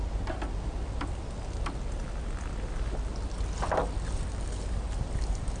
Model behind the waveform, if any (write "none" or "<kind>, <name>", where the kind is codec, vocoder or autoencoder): none